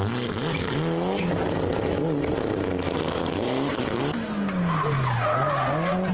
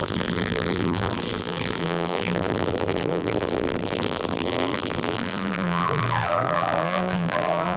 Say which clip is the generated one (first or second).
second